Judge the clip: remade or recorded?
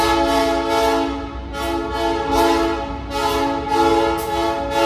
recorded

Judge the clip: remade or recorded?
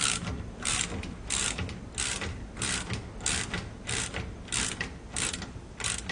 recorded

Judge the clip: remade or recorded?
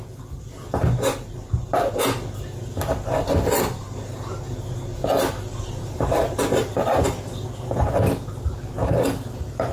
recorded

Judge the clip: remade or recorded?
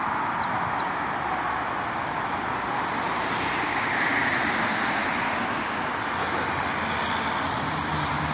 recorded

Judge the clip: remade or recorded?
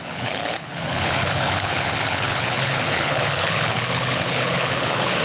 remade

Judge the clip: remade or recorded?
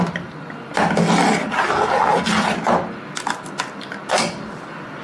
recorded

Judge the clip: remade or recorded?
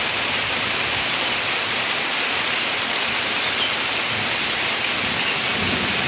recorded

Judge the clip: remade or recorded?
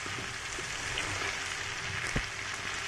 recorded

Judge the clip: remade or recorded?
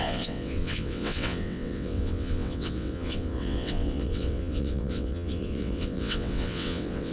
remade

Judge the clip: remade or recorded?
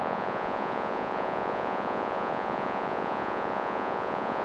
remade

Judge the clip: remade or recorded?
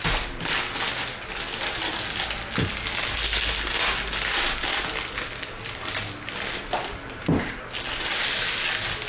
recorded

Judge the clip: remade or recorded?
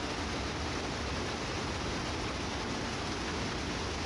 recorded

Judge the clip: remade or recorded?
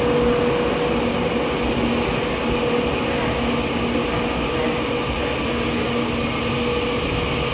recorded